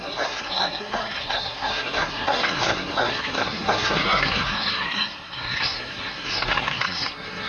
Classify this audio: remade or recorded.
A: remade